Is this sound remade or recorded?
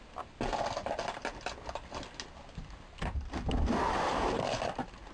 recorded